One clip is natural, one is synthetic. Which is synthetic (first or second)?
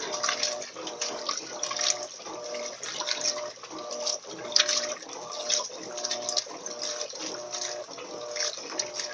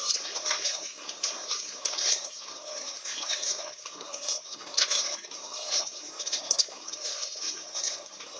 second